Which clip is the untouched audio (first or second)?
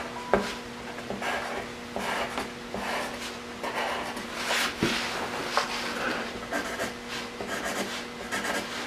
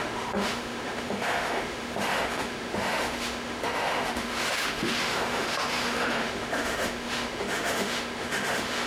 first